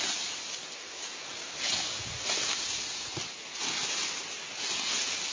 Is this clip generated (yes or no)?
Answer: no